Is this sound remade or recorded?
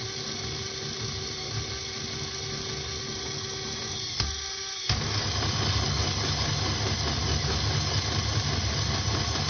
recorded